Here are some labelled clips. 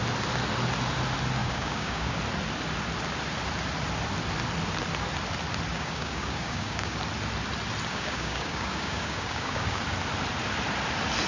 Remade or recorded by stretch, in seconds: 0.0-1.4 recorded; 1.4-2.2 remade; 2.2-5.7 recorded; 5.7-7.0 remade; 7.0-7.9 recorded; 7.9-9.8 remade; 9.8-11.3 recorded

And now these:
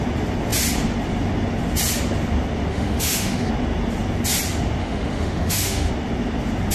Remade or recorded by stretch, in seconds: 0.0-2.7 recorded; 2.7-3.5 remade; 3.5-4.8 recorded; 4.8-5.9 remade; 5.9-6.7 recorded

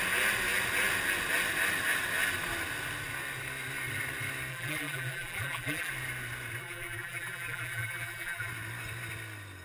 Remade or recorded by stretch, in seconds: 0.0-4.5 recorded; 4.5-5.9 remade; 5.9-6.6 recorded; 6.6-8.5 remade; 8.5-9.6 recorded

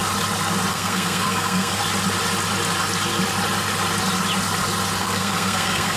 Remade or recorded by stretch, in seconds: 0.0-0.7 recorded; 0.7-1.8 remade; 1.8-5.0 recorded; 5.0-6.0 remade

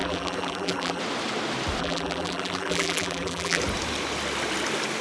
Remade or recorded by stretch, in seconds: 0.0-1.0 remade; 1.0-1.8 recorded; 1.8-3.6 remade; 3.6-5.0 recorded

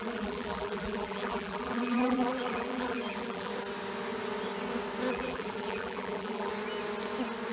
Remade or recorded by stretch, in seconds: 0.0-3.5 remade; 3.5-5.1 recorded; 5.1-6.5 remade; 6.5-7.5 recorded